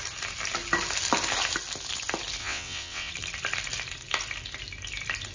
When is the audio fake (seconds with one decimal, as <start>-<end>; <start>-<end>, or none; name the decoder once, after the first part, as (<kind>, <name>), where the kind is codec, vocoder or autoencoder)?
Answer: 2.4-3.1 (vocoder, WaveNeXt)